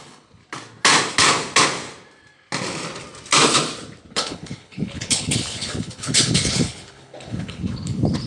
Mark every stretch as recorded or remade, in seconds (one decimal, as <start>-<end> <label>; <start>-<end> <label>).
0.0-0.4 remade; 0.4-4.1 recorded; 4.1-8.3 remade